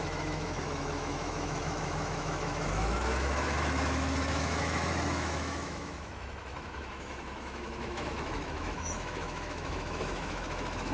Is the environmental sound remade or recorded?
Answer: remade